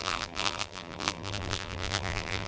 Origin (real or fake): fake